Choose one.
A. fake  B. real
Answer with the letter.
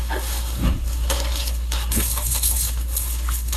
A